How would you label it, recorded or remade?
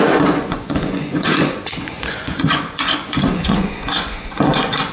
remade